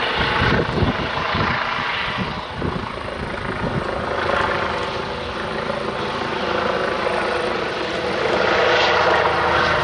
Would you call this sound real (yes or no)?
yes